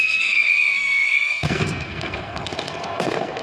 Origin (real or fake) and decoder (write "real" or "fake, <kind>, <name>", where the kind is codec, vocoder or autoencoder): fake, codec, SNAC